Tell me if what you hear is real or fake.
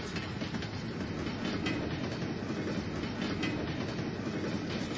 real